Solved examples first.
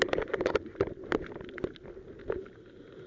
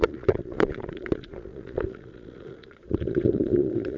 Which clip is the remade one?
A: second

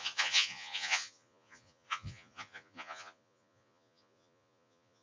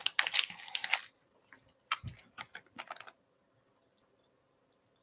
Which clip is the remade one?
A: first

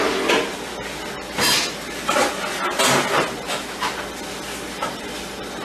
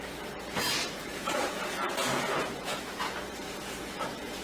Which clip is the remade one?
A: second